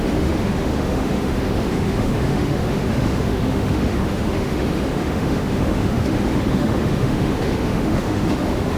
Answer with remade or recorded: remade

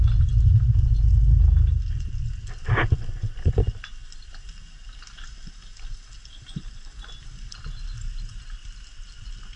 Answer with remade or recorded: recorded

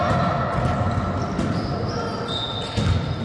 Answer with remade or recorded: recorded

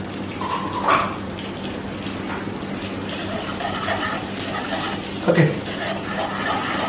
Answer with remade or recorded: recorded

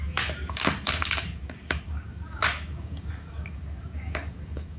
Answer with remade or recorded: remade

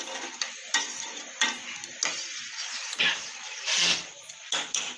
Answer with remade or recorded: recorded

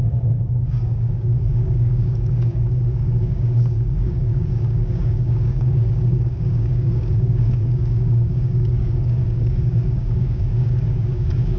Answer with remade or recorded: remade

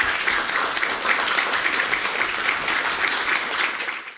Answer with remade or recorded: recorded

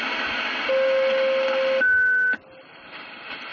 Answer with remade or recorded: recorded